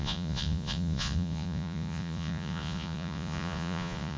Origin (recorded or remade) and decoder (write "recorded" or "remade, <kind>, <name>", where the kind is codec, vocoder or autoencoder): remade, vocoder, Vocos